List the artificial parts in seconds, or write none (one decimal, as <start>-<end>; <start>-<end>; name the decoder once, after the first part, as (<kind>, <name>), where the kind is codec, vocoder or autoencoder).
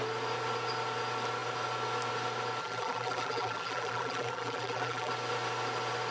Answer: 2.6-5.1 (vocoder, BigVGAN v2)